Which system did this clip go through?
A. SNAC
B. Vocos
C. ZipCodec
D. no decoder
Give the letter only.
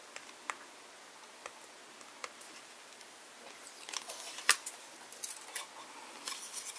D